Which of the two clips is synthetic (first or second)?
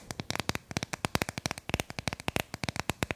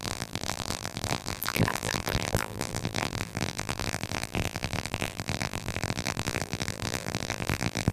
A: second